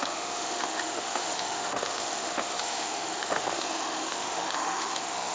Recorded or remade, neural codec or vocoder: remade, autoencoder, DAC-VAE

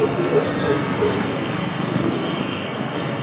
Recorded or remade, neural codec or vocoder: remade, codec, SNAC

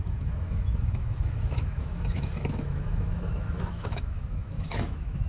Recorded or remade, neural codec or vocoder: remade, autoencoder, DAC-VAE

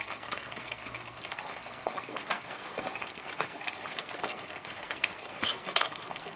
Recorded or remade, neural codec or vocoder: remade, codec, SNAC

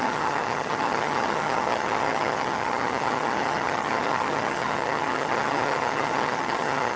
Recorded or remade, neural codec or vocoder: remade, vocoder, HiFi-GAN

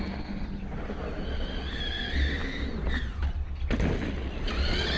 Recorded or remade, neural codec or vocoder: recorded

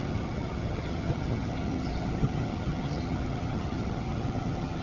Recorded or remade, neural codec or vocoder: remade, vocoder, HiFi-GAN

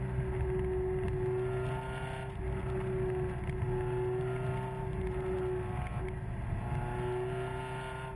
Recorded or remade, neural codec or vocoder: recorded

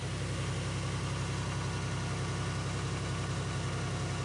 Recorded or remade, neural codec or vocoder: recorded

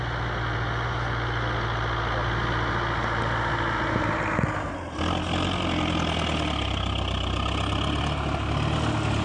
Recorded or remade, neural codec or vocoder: recorded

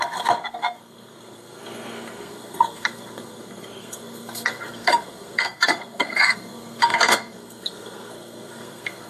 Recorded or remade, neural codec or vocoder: remade, codec, SNAC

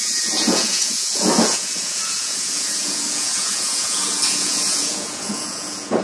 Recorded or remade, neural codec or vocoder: remade, vocoder, Vocos